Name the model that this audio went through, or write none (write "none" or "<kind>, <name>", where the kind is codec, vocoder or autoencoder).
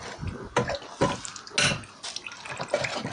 none